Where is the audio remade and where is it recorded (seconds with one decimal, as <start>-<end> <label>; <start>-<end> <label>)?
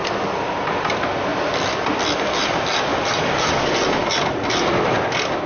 0.0-2.9 recorded; 2.9-4.1 remade; 4.1-5.5 recorded